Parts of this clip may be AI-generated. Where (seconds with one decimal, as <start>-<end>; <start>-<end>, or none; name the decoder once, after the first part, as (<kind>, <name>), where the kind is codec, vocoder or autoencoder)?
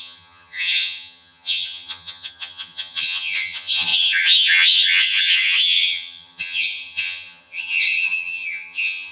0.0-9.1 (vocoder, HiFi-GAN)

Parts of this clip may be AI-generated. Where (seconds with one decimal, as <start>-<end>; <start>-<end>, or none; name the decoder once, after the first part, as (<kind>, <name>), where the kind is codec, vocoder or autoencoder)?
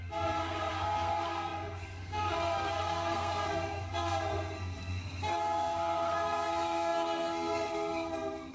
0.0-8.5 (codec, SNAC)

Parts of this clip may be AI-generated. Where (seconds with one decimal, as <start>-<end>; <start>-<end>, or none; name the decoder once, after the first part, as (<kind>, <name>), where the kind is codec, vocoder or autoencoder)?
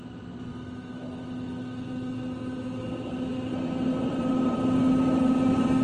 0.5-2.9 (autoencoder, DAC-VAE)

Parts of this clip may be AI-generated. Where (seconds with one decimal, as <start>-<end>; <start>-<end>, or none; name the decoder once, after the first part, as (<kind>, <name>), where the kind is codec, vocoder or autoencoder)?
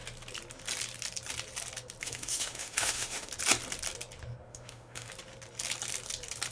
2.0-3.3 (autoencoder, DAC-VAE); 4.5-5.1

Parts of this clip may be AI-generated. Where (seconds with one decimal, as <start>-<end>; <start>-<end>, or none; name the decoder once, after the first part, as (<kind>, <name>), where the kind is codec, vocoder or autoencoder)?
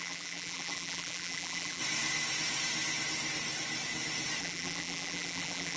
0.0-1.8 (vocoder, BigVGAN v2); 4.4-5.8